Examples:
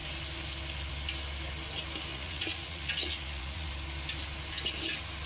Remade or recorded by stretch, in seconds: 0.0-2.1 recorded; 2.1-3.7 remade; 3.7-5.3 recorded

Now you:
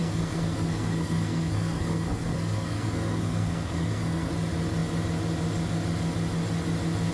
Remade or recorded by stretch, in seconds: 0.0-4.3 remade; 4.3-7.1 recorded

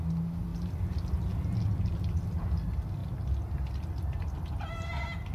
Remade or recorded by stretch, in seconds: 0.0-0.5 recorded; 0.5-2.4 remade; 2.4-5.3 recorded

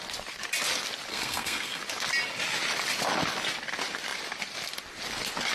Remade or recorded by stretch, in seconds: 0.0-1.1 recorded; 1.1-1.8 remade; 1.8-5.5 recorded

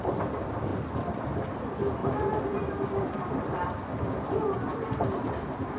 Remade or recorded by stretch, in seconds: 0.0-0.7 recorded; 0.7-1.2 remade; 1.2-4.7 recorded; 4.7-5.8 remade